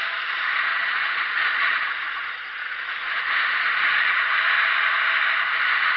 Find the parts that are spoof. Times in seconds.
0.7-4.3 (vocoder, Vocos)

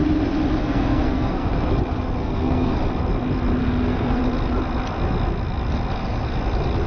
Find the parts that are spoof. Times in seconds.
0.6-1.5 (codec, SNAC); 2.2-2.8; 3.6-4.2

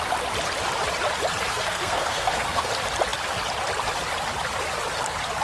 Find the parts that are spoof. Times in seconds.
1.5-2.7 (codec, SNAC)

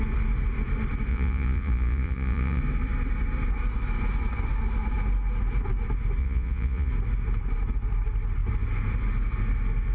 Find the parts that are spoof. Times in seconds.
1.1-2.6 (vocoder, Vocos); 6.2-6.9